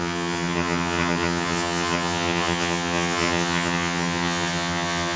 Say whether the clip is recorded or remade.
remade